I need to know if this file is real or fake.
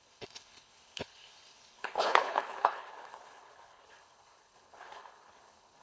fake